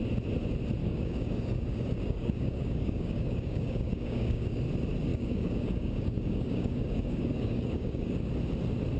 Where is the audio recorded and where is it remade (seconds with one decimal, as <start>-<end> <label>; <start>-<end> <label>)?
0.0-0.8 recorded; 0.8-4.6 remade; 4.6-5.1 recorded; 5.1-8.3 remade; 8.3-9.0 recorded